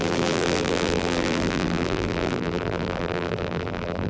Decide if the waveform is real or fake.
fake